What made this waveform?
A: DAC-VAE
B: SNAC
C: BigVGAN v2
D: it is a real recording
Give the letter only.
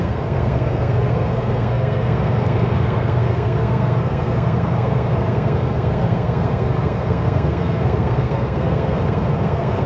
B